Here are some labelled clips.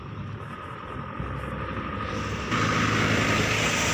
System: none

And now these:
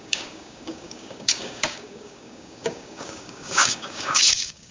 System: codec, DAC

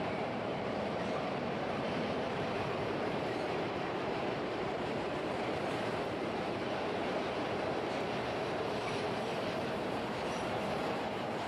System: vocoder, BigVGAN v2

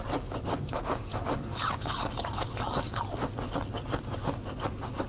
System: none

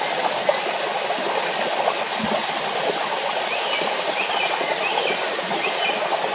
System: none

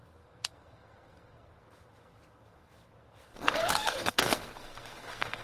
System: codec, SNAC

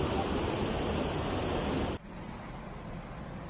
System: none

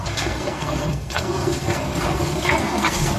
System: codec, SNAC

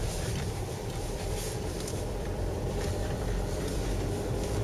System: vocoder, BigVGAN v2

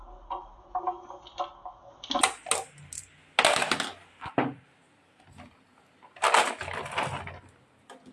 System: none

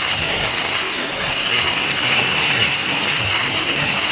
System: codec, SNAC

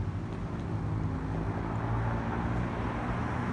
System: none